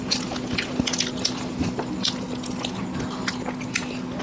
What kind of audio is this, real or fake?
real